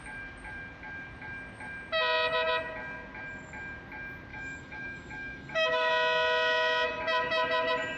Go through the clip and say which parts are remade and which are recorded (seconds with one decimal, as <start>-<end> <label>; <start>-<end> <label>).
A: 0.0-4.3 recorded; 4.3-5.9 remade; 5.9-8.0 recorded